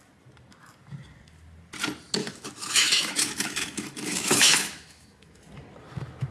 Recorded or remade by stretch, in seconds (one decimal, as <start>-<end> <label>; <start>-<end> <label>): 0.0-2.2 recorded; 2.2-5.4 remade; 5.4-6.3 recorded